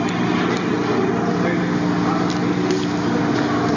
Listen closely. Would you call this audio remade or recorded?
recorded